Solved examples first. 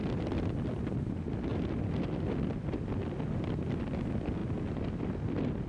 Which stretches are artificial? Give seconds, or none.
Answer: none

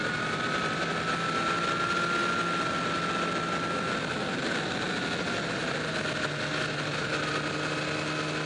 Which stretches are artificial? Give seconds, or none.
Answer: none

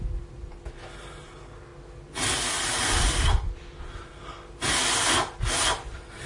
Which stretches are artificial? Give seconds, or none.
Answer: none

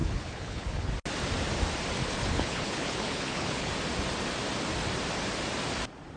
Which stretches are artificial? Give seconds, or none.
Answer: 0.0-0.9 (codec, HILCodec); 2.0-3.7

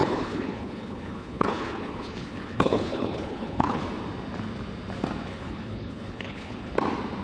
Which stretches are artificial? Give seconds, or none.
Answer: 0.0-3.8 (codec, HILCodec); 5.3-6.7

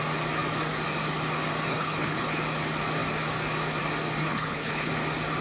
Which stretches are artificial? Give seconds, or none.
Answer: 1.7-2.4 (codec, HILCodec); 4.2-4.9